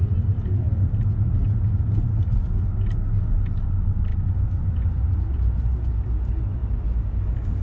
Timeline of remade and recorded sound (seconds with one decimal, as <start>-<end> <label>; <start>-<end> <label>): 0.0-7.6 recorded